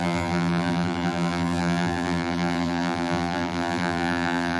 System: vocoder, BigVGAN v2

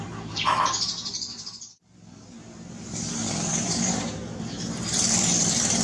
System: vocoder, BigVGAN v2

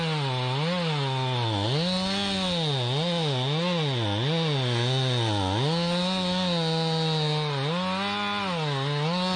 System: none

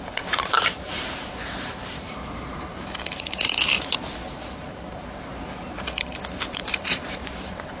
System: vocoder, BigVGAN v2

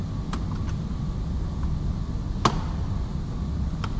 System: none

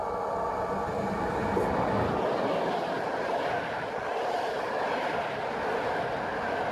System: none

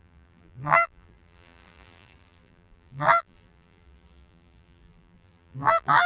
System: vocoder, BigVGAN v2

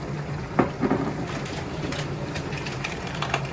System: vocoder, BigVGAN v2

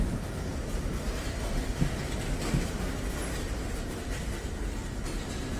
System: none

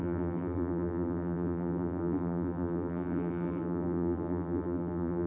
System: vocoder, BigVGAN v2